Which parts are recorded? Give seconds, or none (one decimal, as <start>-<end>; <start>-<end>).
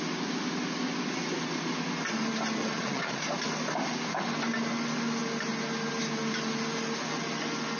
0.0-2.6; 3.2-7.8